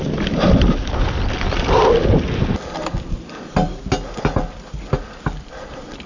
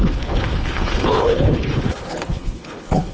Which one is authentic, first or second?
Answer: first